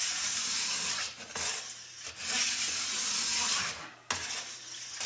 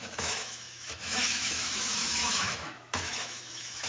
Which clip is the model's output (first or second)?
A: second